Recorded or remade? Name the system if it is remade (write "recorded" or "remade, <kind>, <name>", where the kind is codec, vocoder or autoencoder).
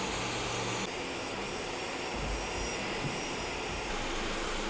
recorded